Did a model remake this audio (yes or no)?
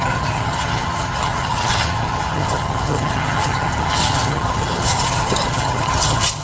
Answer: yes